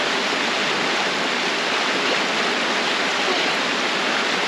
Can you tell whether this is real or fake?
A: real